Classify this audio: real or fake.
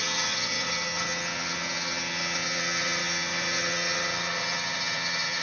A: fake